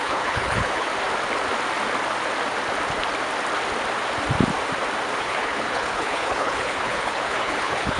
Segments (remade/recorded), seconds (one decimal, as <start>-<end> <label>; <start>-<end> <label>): 0.0-0.9 remade; 0.9-5.2 recorded; 5.2-8.0 remade